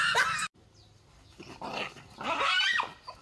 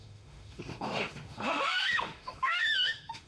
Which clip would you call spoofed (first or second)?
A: second